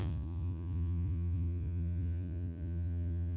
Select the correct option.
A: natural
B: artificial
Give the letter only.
B